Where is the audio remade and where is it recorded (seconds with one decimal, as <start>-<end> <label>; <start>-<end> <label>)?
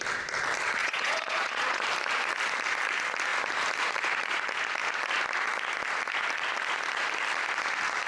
0.0-0.8 recorded; 0.8-1.8 remade; 1.8-8.1 recorded